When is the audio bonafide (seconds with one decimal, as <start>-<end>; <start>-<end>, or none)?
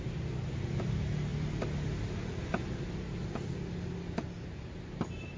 0.0-1.3; 3.3-5.4